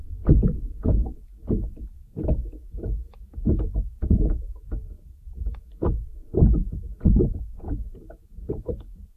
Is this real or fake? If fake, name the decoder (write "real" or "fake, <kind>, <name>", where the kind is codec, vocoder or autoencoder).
fake, vocoder, Vocos